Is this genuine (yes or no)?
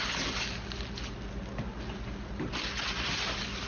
yes